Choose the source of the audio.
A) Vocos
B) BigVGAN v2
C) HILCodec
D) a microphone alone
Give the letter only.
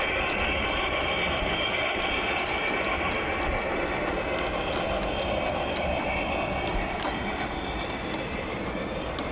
D